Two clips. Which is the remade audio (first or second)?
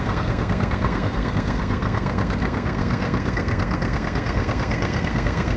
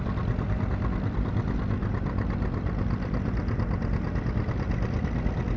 first